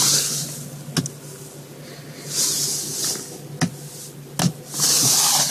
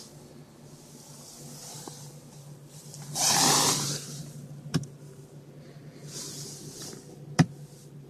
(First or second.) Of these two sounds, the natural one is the first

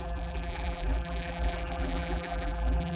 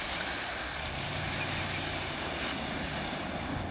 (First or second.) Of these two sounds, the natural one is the second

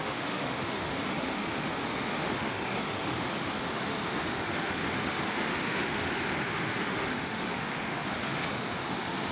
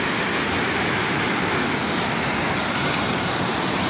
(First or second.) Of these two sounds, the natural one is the second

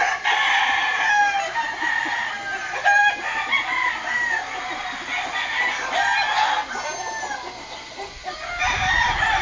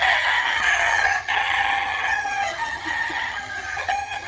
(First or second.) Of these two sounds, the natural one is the first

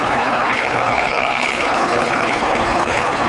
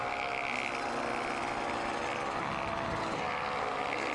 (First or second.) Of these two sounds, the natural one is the second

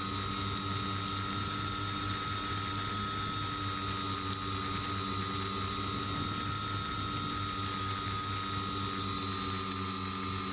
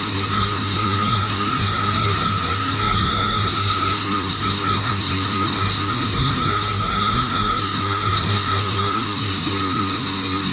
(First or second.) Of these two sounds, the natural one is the first